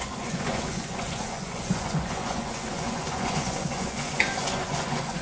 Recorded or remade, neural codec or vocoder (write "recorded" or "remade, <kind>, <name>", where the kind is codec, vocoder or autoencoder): remade, vocoder, Vocos